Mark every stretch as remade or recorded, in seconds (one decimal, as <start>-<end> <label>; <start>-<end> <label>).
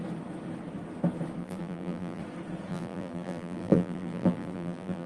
0.0-1.4 recorded; 1.4-2.2 remade; 2.2-2.7 recorded; 2.7-5.1 remade